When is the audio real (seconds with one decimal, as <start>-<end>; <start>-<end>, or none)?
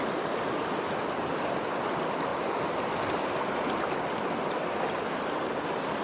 0.0-6.0